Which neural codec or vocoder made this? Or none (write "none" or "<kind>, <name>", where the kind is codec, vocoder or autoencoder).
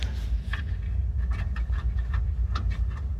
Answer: none